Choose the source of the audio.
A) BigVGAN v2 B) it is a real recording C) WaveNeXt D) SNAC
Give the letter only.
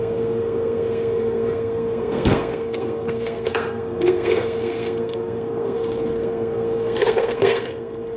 D